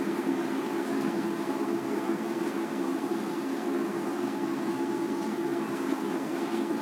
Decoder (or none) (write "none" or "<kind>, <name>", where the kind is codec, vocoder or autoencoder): codec, SNAC